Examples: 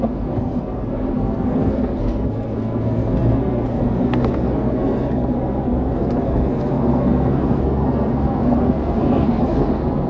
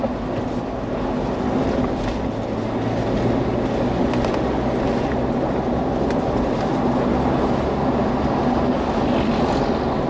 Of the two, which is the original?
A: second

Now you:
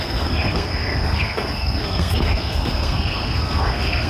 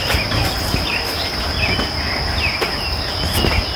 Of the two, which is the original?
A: second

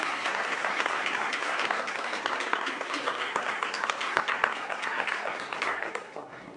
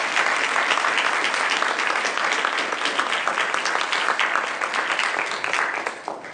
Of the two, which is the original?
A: second